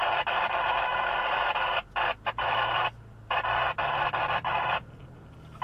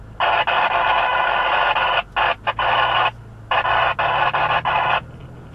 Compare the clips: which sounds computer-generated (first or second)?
first